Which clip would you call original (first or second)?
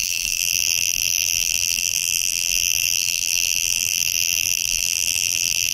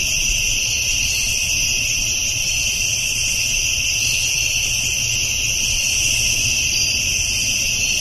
second